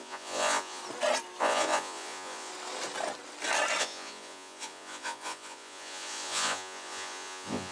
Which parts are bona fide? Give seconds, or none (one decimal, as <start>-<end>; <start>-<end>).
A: 0.8-1.4; 2.5-3.8